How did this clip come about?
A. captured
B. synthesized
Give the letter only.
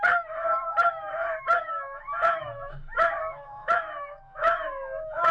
B